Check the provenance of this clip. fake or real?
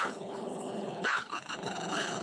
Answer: fake